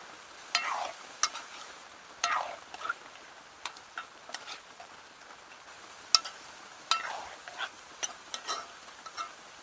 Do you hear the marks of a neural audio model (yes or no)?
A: no